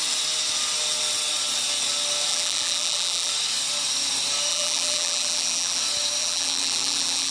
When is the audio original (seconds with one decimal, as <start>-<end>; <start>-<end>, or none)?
0.0-2.3; 3.3-4.5; 5.8-6.2